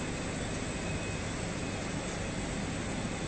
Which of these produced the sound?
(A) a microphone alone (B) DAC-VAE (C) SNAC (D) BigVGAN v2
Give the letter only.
A